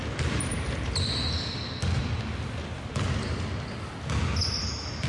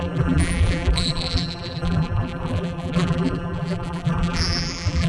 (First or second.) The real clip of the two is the first